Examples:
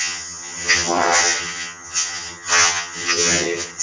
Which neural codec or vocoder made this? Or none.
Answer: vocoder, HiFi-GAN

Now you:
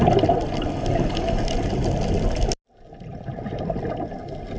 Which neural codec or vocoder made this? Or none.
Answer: none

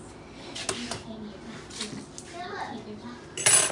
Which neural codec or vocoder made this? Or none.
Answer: none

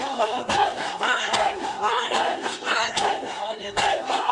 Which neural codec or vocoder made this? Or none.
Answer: codec, SNAC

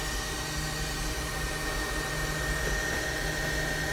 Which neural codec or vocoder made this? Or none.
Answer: none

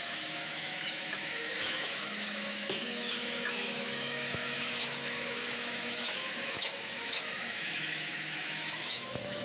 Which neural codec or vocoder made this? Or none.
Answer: autoencoder, DAC-VAE